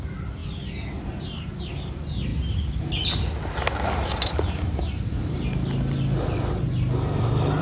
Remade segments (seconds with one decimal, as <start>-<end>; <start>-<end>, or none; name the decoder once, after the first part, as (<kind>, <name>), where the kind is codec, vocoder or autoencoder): none